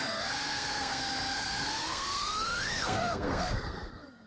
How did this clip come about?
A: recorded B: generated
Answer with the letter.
B